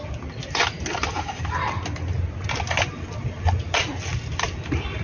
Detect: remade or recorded recorded